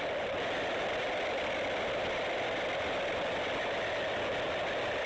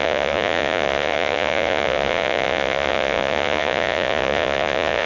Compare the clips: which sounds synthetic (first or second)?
second